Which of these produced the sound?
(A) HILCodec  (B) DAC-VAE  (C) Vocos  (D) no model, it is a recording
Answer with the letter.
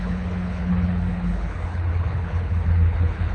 A